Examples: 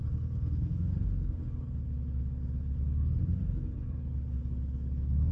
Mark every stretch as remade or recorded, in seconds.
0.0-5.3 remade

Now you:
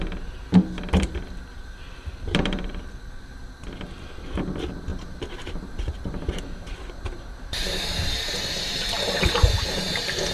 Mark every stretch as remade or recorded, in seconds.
0.0-1.5 recorded; 1.5-2.7 remade; 2.7-4.9 recorded; 4.9-8.3 remade; 8.3-10.3 recorded

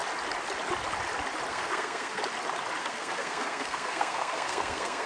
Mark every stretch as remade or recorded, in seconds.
0.0-1.5 recorded; 1.5-2.2 remade; 2.2-2.8 recorded; 2.8-5.1 remade

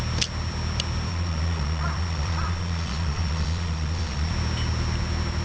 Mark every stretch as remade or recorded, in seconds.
0.0-1.1 recorded; 1.1-4.3 remade; 4.3-5.4 recorded